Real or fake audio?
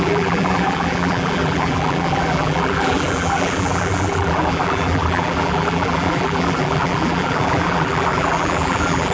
fake